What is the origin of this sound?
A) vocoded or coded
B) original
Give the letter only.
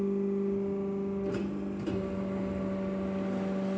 B